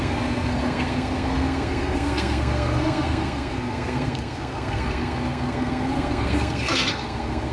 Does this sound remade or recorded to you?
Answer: remade